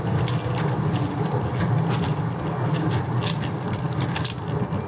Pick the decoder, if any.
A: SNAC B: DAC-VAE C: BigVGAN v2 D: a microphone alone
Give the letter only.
D